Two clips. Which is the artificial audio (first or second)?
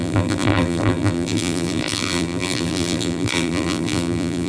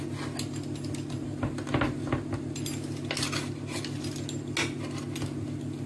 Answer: first